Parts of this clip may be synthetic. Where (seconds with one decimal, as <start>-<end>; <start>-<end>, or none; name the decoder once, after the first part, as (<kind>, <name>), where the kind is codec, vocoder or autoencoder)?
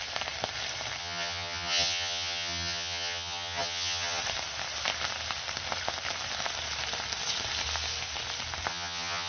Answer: 1.0-4.2 (vocoder, HiFi-GAN); 8.7-9.3